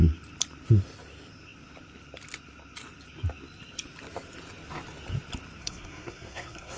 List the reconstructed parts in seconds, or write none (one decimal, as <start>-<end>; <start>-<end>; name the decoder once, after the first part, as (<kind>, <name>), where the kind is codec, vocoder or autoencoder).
5.6-6.8 (codec, SNAC)